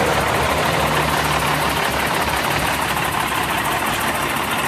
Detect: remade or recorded recorded